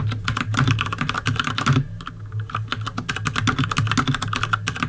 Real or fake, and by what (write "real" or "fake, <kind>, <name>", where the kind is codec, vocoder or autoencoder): real